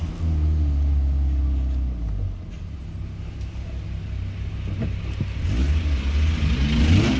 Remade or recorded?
recorded